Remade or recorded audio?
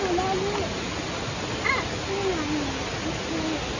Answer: recorded